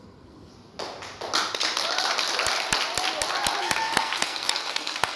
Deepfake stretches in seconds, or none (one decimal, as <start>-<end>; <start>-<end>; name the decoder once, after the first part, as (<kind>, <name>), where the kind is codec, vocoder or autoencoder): 0.0-0.5 (codec, SNAC); 3.6-5.2